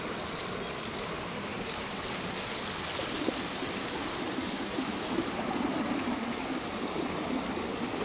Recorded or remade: recorded